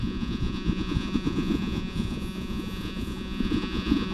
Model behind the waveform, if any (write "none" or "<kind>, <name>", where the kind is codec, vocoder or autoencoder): vocoder, Vocos